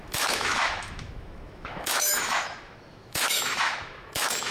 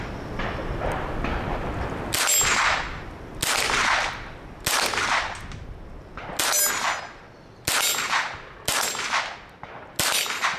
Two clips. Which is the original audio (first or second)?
second